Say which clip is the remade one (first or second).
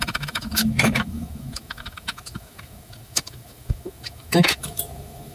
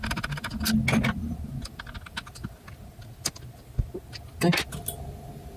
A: first